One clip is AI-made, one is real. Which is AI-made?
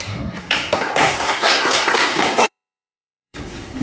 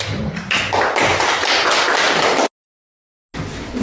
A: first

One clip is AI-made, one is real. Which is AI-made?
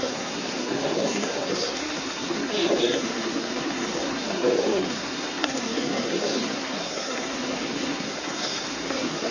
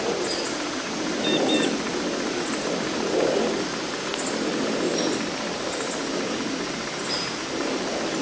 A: first